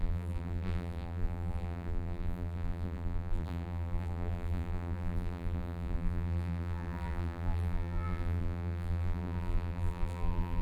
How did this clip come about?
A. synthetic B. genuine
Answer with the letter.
A